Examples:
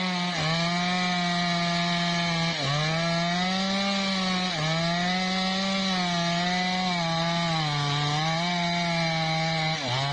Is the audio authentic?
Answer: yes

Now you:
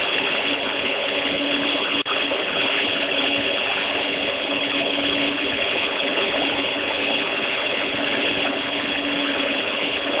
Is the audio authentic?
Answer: no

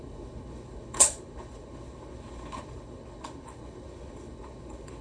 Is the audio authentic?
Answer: no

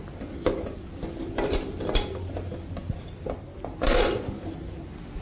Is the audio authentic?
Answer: yes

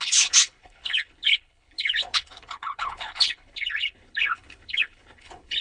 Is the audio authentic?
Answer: no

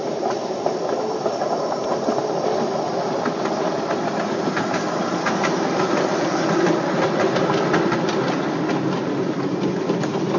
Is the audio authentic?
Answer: yes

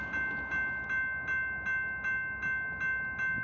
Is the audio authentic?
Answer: yes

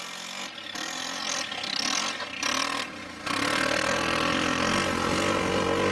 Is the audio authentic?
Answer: yes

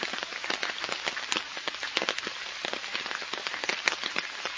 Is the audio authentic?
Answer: yes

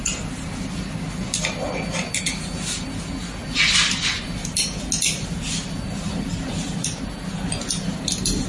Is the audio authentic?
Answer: yes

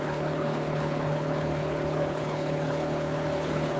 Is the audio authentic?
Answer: no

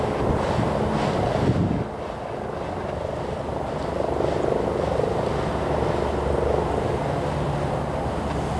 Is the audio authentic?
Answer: yes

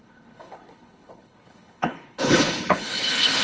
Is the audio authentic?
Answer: no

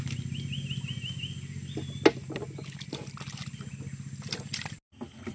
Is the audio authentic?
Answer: yes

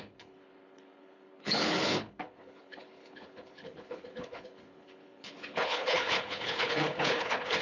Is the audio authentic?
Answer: no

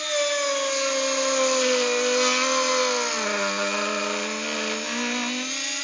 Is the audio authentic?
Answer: yes